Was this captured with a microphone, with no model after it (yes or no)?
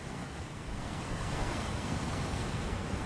no